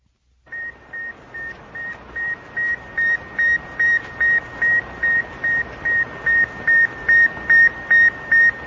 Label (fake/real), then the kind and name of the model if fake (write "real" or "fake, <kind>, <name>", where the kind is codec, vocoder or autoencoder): real